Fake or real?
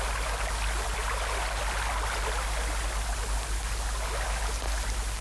real